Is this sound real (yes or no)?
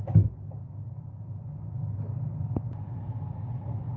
yes